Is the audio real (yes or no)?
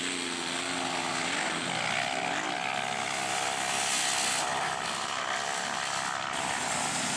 yes